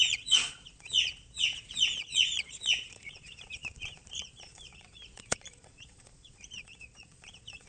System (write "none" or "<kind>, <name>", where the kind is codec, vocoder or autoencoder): vocoder, Vocos